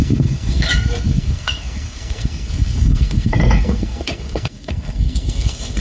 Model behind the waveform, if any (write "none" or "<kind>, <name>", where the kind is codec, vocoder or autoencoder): codec, SNAC